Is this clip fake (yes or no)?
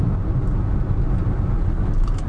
no